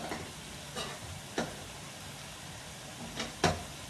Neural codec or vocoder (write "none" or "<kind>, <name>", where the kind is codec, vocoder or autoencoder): none